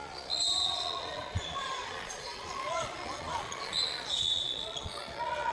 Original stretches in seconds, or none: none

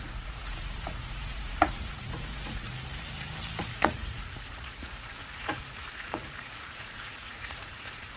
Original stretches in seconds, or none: 2.7-3.7

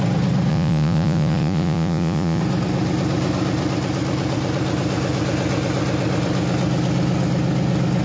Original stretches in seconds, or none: 0.0-0.5; 2.4-8.0

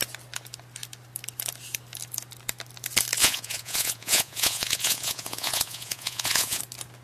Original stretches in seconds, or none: 0.0-3.2; 6.6-7.0